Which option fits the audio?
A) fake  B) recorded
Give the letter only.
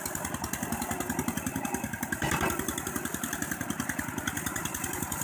B